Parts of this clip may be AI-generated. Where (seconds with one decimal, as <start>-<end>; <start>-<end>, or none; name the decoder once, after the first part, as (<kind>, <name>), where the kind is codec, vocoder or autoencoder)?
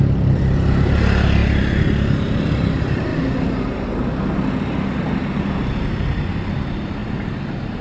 0.0-3.1 (vocoder, BigVGAN v2); 5.1-7.8